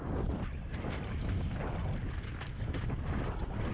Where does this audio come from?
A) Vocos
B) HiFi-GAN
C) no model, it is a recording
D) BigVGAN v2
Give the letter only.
C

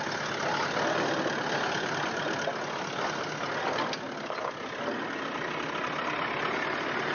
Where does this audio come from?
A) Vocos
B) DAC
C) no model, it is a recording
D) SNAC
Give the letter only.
C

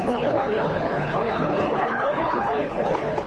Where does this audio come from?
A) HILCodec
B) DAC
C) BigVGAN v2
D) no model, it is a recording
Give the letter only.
A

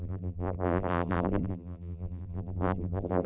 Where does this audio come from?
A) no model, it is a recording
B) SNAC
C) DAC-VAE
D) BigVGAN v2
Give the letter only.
D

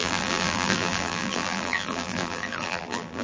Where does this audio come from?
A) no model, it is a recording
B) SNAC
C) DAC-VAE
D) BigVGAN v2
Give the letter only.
D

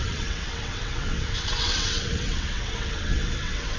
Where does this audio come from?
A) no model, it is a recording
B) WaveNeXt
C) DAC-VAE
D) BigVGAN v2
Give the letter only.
B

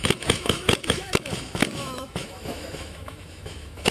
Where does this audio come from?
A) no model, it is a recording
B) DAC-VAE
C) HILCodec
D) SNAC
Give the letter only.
B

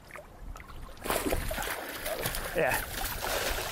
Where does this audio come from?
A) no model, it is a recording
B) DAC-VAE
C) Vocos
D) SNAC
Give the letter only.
A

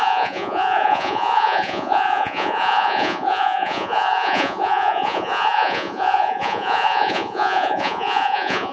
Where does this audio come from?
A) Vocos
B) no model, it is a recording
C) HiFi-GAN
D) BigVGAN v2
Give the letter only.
A